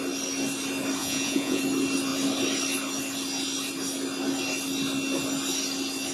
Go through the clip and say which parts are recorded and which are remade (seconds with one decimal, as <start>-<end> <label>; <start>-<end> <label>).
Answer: 0.0-1.0 recorded; 1.0-1.6 remade; 1.6-6.1 recorded